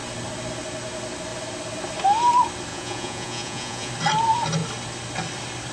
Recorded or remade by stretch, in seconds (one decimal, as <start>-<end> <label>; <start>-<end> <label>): 0.0-2.7 recorded; 2.7-3.9 remade; 3.9-5.7 recorded